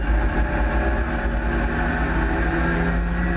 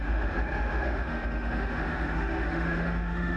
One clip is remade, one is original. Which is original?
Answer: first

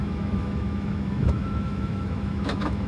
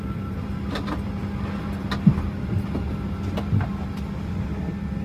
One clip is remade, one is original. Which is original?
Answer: second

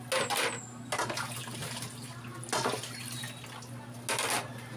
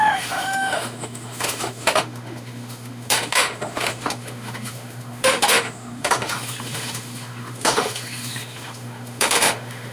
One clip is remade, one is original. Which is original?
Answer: first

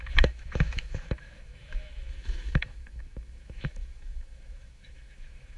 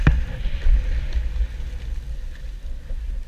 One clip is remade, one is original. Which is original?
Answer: second